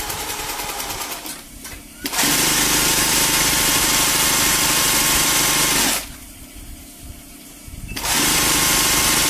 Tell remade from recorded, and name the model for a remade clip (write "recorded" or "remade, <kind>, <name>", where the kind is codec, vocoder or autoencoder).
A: remade, vocoder, BigVGAN v2